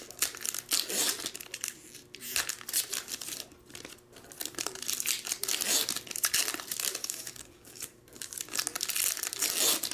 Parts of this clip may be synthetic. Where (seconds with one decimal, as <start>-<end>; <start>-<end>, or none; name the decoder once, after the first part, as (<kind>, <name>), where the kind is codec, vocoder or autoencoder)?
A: 7.0-8.3 (codec, DAC)

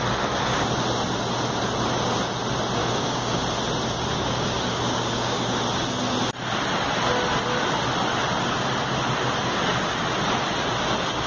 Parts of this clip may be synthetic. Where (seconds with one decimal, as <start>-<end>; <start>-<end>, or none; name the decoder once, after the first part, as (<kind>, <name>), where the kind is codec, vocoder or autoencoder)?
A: 2.8-3.4 (codec, DAC); 4.1-5.6

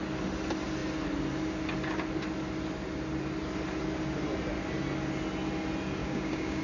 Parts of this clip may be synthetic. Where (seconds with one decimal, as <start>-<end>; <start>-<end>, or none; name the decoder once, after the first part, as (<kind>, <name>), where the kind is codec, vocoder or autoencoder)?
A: 6.0-6.6 (codec, DAC)

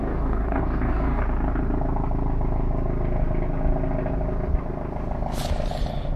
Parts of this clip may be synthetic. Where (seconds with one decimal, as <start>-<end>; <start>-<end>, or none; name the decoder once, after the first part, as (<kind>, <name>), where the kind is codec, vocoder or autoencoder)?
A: 0.0-1.2 (codec, DAC)

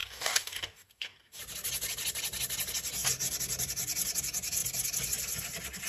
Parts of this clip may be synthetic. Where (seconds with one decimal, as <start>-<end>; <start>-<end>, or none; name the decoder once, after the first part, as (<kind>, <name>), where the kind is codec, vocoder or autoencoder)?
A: 0.0-1.4 (codec, DAC)

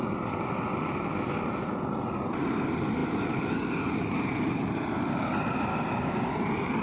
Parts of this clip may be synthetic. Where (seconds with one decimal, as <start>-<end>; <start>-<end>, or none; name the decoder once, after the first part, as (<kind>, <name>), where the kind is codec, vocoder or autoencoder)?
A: 5.7-6.3 (codec, DAC)

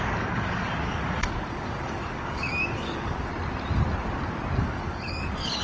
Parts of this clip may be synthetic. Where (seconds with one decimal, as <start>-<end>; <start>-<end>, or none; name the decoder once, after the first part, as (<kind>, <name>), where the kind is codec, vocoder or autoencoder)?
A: 0.0-3.3 (codec, DAC); 4.6-5.6